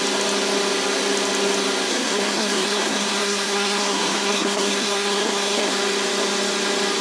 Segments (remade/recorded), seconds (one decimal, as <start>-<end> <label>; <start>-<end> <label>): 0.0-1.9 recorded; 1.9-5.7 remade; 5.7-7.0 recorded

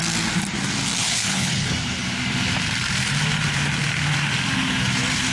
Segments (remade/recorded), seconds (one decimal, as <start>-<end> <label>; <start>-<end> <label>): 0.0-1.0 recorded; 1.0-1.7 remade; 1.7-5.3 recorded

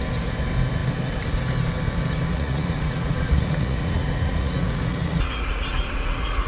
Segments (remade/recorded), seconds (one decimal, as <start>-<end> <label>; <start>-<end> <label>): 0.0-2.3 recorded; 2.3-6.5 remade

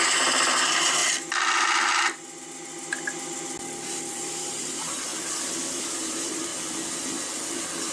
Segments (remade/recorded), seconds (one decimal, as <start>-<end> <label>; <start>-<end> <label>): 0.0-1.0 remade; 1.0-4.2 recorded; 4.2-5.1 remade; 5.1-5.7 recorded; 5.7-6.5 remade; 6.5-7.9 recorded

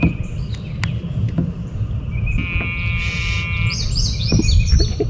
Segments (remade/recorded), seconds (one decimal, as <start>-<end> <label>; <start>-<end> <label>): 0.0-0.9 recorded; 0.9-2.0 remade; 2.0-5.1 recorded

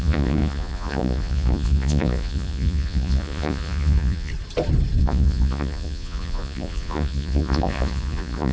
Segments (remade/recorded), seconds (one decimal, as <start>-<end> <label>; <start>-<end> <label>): 0.0-4.3 remade; 4.3-5.0 recorded; 5.0-8.5 remade

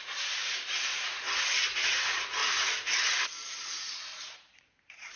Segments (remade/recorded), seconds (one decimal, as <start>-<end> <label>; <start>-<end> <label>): 0.0-2.4 remade; 2.4-3.5 recorded; 3.5-5.2 remade